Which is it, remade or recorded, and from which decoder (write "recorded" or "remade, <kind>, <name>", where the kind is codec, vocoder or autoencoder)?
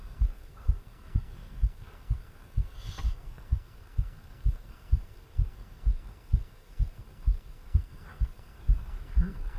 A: remade, codec, SNAC